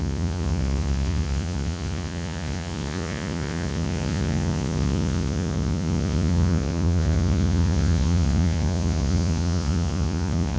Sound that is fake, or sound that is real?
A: fake